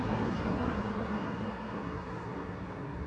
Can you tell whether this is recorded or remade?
remade